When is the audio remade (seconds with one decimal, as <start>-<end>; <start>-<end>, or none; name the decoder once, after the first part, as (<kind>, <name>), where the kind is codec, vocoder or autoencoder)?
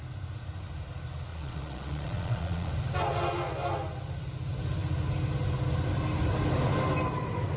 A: 1.3-2.7 (vocoder, Vocos)